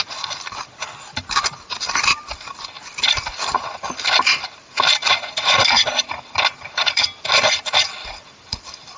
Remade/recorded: remade